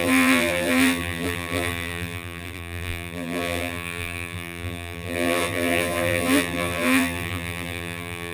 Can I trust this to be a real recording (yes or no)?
no